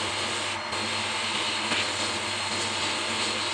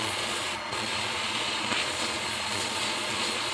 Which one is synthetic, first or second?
second